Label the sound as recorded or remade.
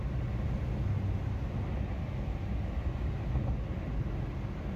recorded